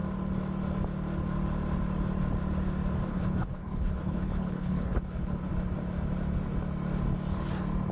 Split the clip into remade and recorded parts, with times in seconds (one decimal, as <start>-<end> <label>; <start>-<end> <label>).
0.0-3.1 recorded; 3.1-5.5 remade; 5.5-7.9 recorded